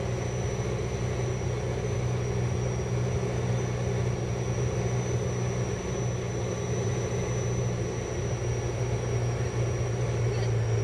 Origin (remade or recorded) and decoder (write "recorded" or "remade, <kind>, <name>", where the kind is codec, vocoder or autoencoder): recorded